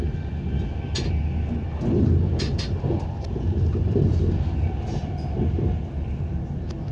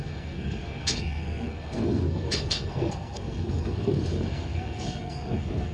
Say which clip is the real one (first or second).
first